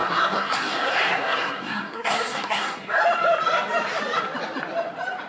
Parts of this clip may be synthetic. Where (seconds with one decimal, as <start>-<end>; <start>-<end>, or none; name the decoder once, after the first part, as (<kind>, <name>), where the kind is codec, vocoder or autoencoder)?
0.0-3.0 (codec, SNAC)